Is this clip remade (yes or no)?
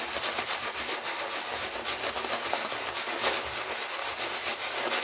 no